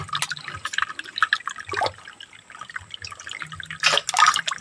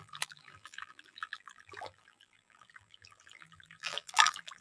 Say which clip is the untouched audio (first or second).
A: first